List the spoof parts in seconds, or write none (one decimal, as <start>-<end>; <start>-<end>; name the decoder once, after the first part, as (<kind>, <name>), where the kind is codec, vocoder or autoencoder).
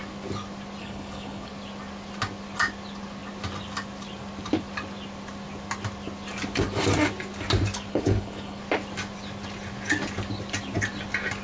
0.8-1.5 (codec, HILCodec); 7.9-8.6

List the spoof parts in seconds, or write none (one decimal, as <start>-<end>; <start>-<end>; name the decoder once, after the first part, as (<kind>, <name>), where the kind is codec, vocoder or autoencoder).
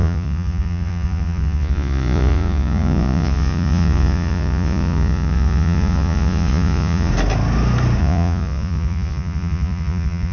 0.0-7.1 (vocoder, Vocos); 8.0-10.3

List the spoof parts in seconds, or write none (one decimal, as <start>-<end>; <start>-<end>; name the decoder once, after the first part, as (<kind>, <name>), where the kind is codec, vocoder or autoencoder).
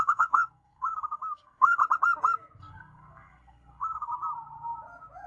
0.0-1.8 (codec, SNAC); 2.6-4.1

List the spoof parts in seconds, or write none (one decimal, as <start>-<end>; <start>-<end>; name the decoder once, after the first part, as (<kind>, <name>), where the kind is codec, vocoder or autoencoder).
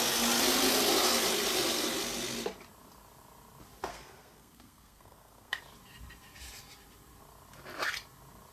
3.9-5.6 (codec, SNAC)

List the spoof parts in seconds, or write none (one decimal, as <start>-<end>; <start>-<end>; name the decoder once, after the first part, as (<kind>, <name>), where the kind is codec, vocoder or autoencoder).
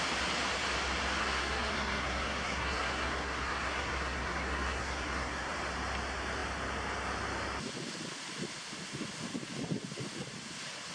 1.2-5.5 (codec, SNAC)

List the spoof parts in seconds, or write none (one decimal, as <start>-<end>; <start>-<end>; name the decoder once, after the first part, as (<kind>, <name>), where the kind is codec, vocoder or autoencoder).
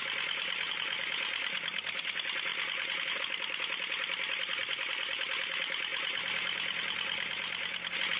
none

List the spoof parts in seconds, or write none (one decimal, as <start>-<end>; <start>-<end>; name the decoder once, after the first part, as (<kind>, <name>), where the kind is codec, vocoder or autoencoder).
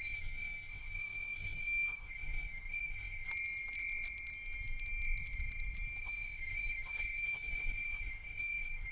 0.0-3.3 (autoencoder, DAC-VAE); 6.0-8.9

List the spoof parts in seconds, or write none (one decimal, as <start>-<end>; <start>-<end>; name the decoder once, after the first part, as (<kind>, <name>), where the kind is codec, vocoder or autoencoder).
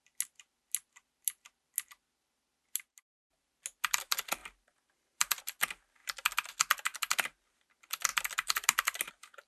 4.4-5.4 (vocoder, BigVGAN v2); 8.1-9.1